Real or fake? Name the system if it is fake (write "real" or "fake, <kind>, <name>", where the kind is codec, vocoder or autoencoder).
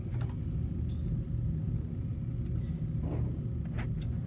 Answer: real